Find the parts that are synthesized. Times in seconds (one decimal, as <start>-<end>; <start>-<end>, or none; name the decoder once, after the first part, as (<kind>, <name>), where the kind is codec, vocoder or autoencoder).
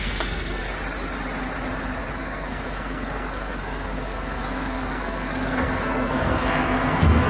0.0-0.6 (codec, SNAC); 2.2-7.3